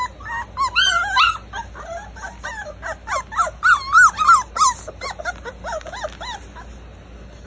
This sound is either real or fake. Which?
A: real